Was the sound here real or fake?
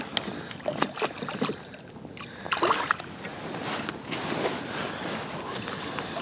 real